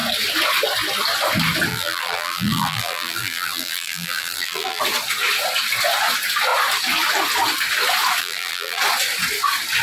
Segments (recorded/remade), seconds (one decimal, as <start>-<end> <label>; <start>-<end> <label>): 0.0-1.7 recorded; 1.7-4.8 remade; 4.8-8.2 recorded; 8.2-8.8 remade; 8.8-9.8 recorded